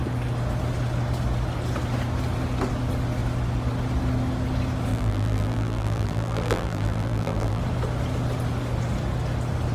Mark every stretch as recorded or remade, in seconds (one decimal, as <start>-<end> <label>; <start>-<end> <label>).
0.0-4.9 recorded; 4.9-7.6 remade; 7.6-9.7 recorded